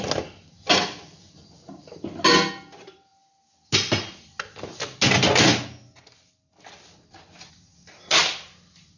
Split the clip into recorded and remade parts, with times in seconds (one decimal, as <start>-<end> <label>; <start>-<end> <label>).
0.0-9.0 recorded

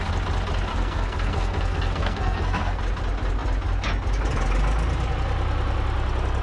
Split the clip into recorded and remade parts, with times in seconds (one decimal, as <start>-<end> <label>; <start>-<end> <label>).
0.0-0.7 recorded; 0.7-2.8 remade; 2.8-6.4 recorded

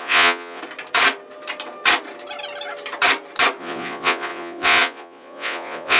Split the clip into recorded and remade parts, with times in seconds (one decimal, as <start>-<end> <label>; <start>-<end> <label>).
0.0-0.6 remade; 0.6-3.6 recorded; 3.6-6.0 remade

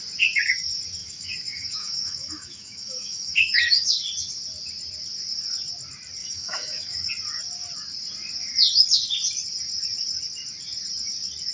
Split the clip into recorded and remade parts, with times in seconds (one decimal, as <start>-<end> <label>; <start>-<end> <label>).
0.0-1.0 recorded; 1.0-4.0 remade; 4.0-6.2 recorded; 6.2-7.1 remade; 7.1-11.5 recorded

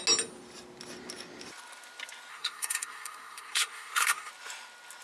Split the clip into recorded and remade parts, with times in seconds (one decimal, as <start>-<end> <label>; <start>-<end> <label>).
0.0-2.3 recorded; 2.3-4.3 remade; 4.3-5.0 recorded